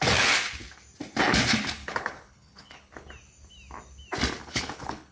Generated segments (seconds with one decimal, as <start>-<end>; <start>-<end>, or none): 1.8-3.1; 4.4-5.1